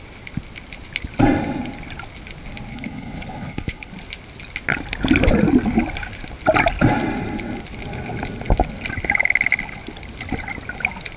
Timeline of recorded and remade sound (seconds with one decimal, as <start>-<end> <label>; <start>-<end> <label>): 0.0-2.7 recorded; 2.7-3.9 remade; 3.9-11.2 recorded